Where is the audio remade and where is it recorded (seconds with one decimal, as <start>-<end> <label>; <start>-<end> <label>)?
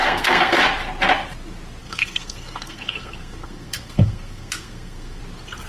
0.0-0.6 remade; 0.6-1.8 recorded; 1.8-5.2 remade; 5.2-5.7 recorded